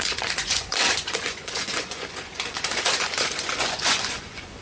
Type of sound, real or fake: fake